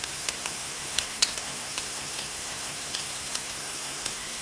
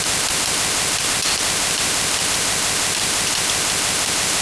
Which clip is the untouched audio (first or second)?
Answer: second